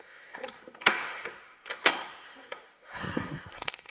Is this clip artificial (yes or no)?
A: yes